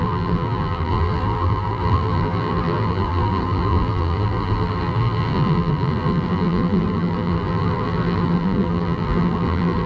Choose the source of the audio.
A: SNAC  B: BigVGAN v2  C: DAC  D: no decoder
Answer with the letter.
B